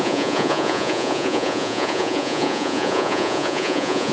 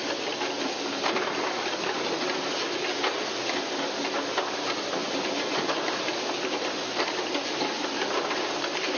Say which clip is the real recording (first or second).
second